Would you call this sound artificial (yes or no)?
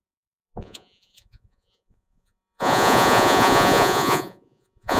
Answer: yes